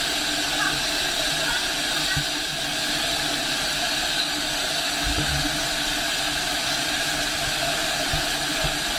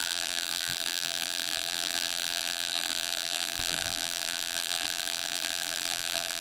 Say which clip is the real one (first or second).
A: first